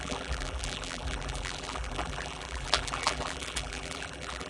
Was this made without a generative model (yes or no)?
no